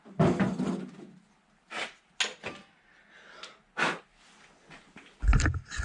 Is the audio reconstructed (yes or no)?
no